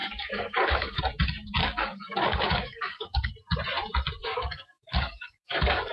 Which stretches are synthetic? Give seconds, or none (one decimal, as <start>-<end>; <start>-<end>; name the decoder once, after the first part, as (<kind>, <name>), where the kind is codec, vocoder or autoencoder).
0.0-1.0 (codec, DAC); 1.6-3.3; 4.2-5.9

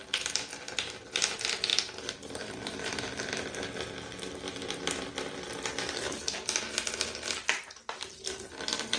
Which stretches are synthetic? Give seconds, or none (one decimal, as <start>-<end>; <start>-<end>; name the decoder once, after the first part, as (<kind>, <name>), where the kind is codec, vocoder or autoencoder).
none

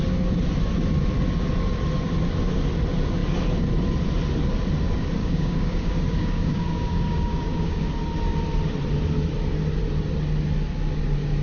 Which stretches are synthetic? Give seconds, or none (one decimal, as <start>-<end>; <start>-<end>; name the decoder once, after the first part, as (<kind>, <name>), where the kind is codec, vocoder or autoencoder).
5.2-7.9 (codec, DAC)